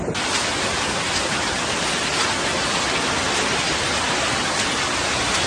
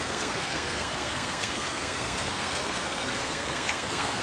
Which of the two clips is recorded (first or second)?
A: first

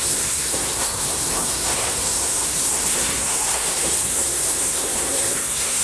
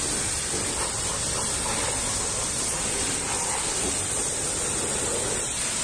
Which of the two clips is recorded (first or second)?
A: second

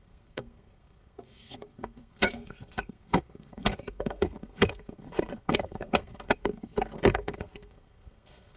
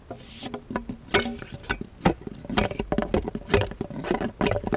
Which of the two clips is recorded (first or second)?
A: second